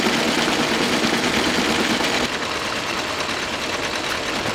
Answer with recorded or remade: recorded